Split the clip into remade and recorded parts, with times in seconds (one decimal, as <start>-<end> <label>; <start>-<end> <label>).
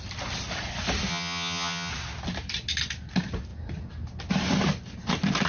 0.0-1.1 recorded; 1.1-1.9 remade; 1.9-5.5 recorded